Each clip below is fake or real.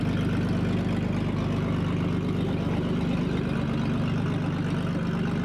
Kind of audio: real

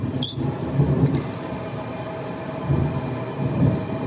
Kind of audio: real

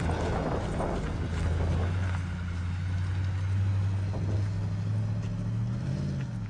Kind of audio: real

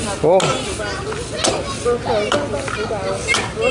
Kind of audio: real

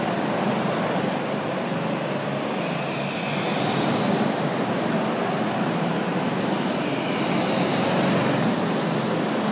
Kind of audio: real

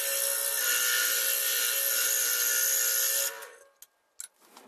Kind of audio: real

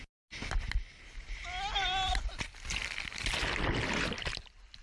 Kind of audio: real